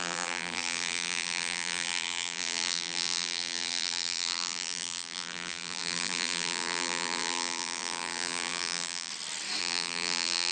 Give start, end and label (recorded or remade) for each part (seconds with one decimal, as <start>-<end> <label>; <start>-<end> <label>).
0.0-9.1 remade; 9.1-9.6 recorded; 9.6-10.5 remade